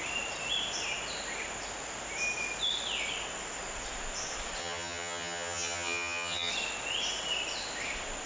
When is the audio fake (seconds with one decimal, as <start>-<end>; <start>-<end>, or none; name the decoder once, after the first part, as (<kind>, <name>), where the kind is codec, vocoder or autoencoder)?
4.6-6.5 (vocoder, HiFi-GAN)